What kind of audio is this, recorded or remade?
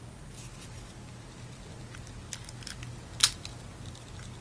recorded